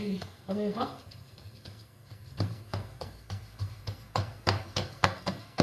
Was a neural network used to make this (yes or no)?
yes